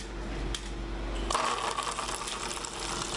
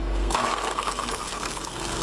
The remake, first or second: second